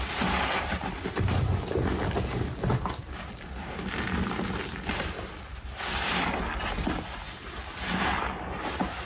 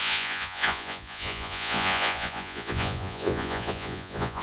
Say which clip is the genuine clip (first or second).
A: first